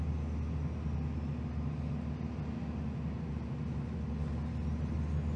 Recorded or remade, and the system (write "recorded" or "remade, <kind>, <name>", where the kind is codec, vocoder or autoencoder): recorded